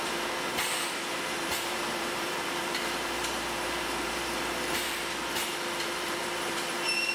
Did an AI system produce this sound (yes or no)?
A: yes